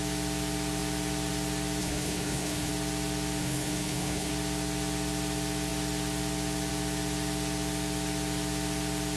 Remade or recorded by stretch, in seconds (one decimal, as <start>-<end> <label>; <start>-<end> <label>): 0.0-1.8 recorded; 1.8-2.7 remade; 2.7-3.4 recorded; 3.4-4.3 remade; 4.3-9.2 recorded